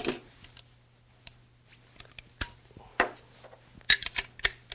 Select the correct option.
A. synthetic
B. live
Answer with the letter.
B